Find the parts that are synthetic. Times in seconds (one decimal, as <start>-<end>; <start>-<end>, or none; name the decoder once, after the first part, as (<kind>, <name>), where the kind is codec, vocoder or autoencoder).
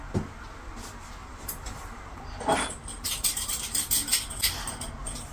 1.2-3.6 (vocoder, BigVGAN v2)